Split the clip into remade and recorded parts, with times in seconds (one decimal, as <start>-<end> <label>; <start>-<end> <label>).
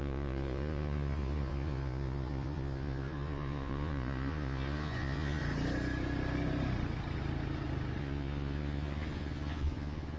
0.0-5.4 remade; 5.4-8.0 recorded; 8.0-10.2 remade